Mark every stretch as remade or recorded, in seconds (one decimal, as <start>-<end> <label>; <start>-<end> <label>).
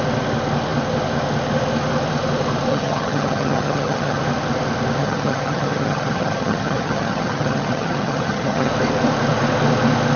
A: 0.0-2.7 recorded; 2.7-4.2 remade; 4.2-5.0 recorded; 5.0-8.7 remade; 8.7-10.2 recorded